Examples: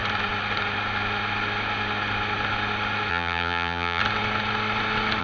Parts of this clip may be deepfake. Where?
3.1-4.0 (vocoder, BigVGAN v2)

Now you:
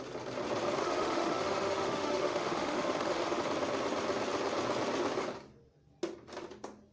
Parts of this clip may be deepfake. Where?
0.8-3.4 (autoencoder, DAC-VAE)

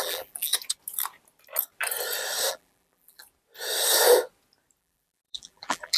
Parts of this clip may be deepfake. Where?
0.0-0.5 (vocoder, BigVGAN v2); 2.5-3.2; 4.8-6.0

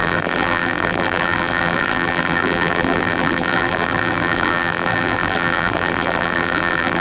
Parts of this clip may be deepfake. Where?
0.0-7.0 (vocoder, BigVGAN v2)

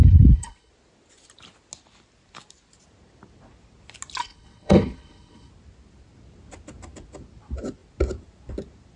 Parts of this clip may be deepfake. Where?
0.0-0.7 (codec, HILCodec); 4.2-5.5